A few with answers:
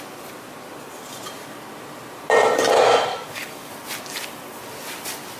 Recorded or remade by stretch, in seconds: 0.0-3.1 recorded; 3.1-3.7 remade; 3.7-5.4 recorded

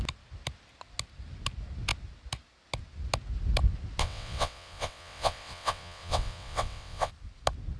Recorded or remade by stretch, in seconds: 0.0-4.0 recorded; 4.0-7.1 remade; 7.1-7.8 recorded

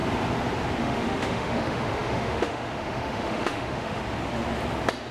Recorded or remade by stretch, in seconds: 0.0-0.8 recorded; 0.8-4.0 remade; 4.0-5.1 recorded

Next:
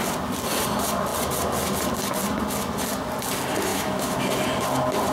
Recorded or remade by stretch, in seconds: 0.0-3.7 recorded; 3.7-4.2 remade; 4.2-5.1 recorded